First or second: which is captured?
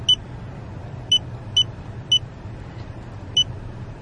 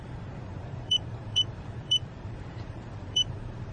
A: first